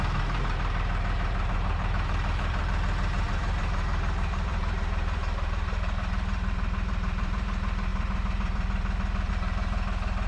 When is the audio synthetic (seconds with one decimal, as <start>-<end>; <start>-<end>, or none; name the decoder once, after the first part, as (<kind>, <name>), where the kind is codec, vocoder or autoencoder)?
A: 0.0-10.3 (vocoder, BigVGAN v2)